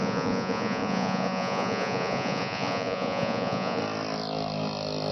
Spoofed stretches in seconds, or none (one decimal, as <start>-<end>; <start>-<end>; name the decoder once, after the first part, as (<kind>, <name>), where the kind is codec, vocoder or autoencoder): 0.0-3.8 (vocoder, Vocos)